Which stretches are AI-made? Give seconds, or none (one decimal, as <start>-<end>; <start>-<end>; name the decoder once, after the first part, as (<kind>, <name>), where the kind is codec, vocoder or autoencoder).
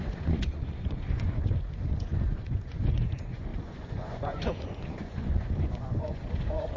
0.0-6.8 (vocoder, Vocos)